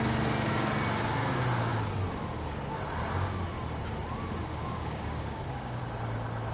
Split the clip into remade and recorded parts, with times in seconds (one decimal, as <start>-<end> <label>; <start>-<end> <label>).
0.0-4.4 recorded; 4.4-5.8 remade; 5.8-6.5 recorded